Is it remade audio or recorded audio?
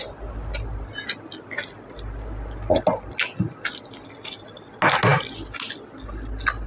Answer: recorded